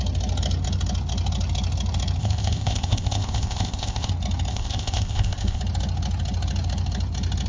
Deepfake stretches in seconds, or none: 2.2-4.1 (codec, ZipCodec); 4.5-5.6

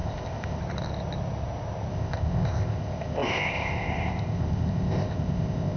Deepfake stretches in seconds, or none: 0.0-0.6 (codec, ZipCodec); 1.9-5.8

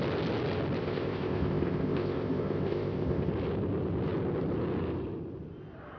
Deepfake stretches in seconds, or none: 0.8-3.3 (codec, ZipCodec)

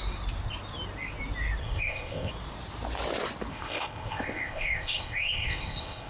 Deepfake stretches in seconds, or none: 1.6-2.3 (codec, ZipCodec); 3.5-6.1